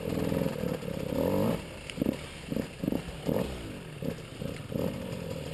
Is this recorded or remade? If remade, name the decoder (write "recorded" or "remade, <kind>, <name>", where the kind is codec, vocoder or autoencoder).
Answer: recorded